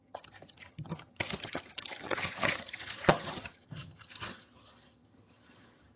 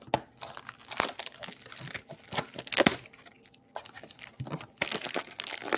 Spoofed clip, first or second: first